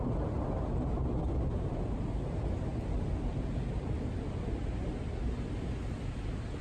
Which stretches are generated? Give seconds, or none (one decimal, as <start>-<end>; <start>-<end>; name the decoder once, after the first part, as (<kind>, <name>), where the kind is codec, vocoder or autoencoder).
none